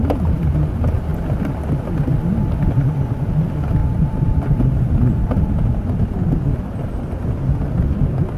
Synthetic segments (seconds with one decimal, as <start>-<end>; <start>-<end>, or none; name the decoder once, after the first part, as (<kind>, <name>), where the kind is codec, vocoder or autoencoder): 3.8-6.6 (vocoder, BigVGAN v2)